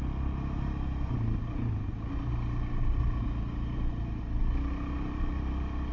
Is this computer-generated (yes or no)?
no